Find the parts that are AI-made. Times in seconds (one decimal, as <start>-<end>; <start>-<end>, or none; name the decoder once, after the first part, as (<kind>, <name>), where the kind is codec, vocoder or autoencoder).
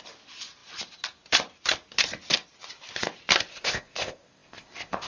3.5-5.1 (codec, ZipCodec)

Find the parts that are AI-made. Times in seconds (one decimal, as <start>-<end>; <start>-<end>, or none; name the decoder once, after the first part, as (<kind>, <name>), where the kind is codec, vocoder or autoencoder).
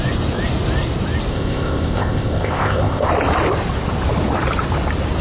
1.3-3.1 (codec, ZipCodec)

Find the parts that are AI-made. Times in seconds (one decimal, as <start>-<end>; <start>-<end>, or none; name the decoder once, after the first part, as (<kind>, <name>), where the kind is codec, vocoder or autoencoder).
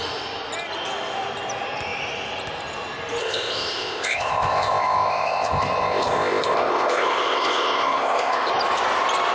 3.2-8.5 (codec, ZipCodec)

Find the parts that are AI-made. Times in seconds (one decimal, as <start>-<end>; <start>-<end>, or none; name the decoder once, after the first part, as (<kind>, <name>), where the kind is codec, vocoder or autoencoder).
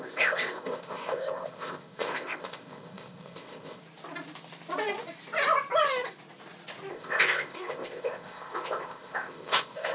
0.0-3.8 (codec, ZipCodec); 6.9-9.9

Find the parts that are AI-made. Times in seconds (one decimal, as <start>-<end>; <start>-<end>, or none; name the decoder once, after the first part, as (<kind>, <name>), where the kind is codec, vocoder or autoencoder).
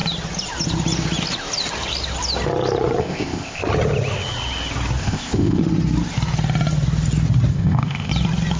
3.0-3.6 (codec, ZipCodec); 5.0-5.6; 7.5-8.1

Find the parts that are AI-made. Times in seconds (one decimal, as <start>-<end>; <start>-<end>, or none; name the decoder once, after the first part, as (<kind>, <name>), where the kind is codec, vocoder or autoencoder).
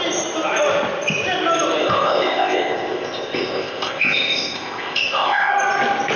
1.8-5.5 (codec, ZipCodec)